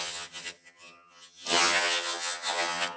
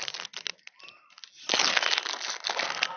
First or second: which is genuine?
second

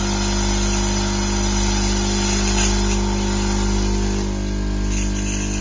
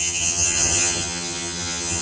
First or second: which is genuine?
first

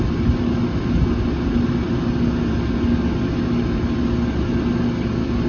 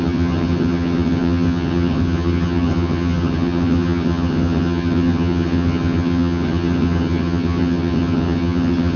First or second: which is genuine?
first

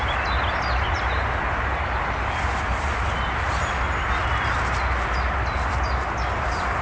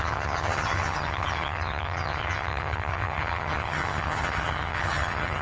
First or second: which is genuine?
first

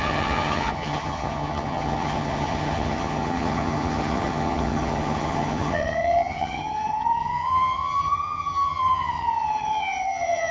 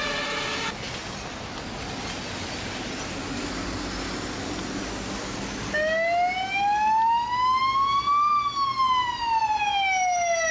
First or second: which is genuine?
second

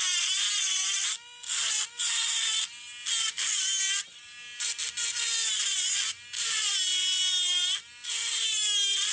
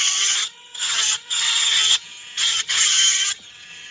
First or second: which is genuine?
first